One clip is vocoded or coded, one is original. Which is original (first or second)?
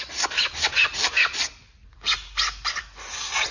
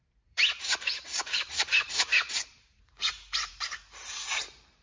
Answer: first